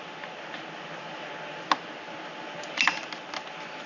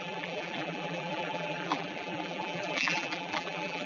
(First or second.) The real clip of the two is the first